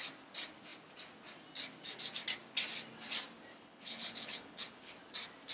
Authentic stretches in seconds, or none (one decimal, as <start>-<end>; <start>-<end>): 0.0-3.5; 4.9-5.5